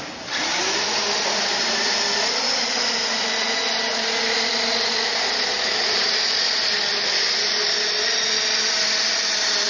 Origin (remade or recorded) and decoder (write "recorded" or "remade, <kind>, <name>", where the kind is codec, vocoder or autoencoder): recorded